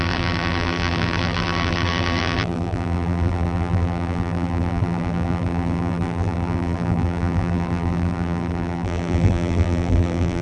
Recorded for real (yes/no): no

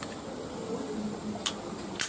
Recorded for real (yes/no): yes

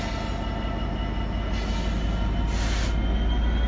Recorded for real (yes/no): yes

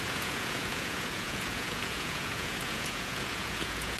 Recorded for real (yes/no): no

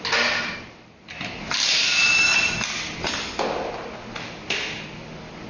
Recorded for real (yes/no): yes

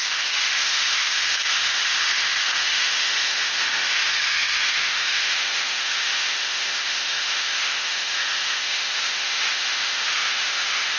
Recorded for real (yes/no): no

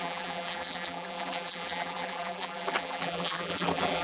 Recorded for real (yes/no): no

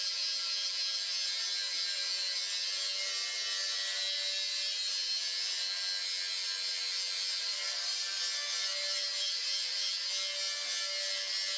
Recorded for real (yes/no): yes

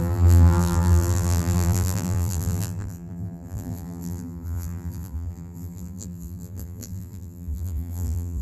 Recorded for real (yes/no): no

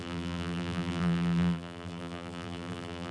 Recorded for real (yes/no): no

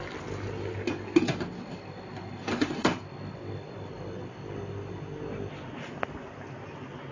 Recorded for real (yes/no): yes